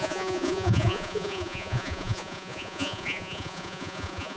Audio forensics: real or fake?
fake